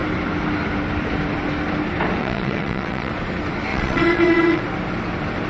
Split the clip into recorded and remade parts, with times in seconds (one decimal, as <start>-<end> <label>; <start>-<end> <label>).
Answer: 0.0-2.2 recorded; 2.2-3.1 remade; 3.1-3.7 recorded; 3.7-4.6 remade; 4.6-5.5 recorded